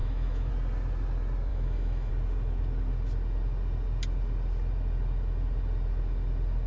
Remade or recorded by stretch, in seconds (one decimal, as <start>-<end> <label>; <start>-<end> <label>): 0.0-0.5 remade; 0.5-1.5 recorded; 1.5-2.1 remade; 2.1-6.7 recorded